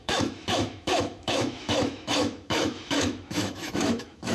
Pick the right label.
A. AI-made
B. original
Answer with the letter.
A